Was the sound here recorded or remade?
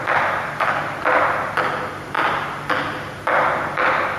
recorded